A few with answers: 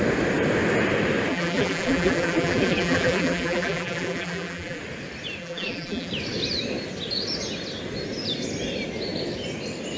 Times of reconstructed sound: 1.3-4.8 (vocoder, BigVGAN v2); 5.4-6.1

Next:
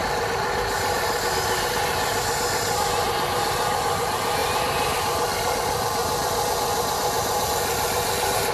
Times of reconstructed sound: 4.4-5.5 (vocoder, BigVGAN v2)

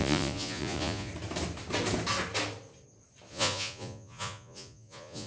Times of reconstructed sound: 0.0-1.1 (vocoder, Vocos); 3.3-5.3

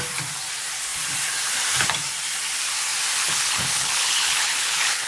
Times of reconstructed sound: 3.2-5.1 (codec, HILCodec)

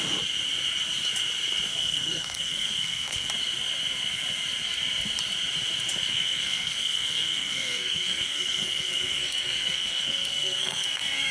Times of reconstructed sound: 1.7-3.3 (codec, SNAC); 6.1-11.3

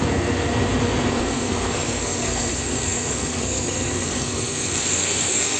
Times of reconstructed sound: 0.0-0.5 (codec, SNAC); 1.1-5.6